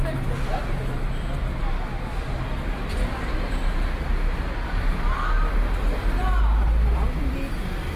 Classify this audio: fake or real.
real